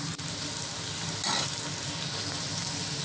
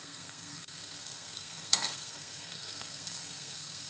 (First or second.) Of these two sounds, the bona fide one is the first